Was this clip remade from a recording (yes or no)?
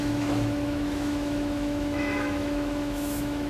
yes